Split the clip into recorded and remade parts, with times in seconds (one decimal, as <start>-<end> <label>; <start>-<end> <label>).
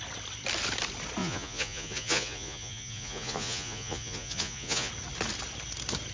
0.0-1.2 recorded; 1.2-4.9 remade; 4.9-6.1 recorded